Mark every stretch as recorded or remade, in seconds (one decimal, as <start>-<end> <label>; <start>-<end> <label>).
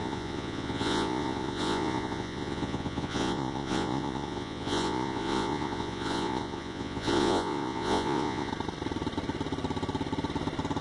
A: 0.0-8.5 remade; 8.5-10.8 recorded